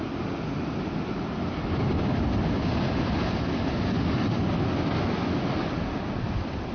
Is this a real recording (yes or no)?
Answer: yes